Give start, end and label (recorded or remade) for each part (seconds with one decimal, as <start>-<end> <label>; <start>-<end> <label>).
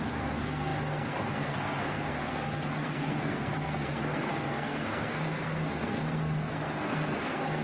0.0-7.6 remade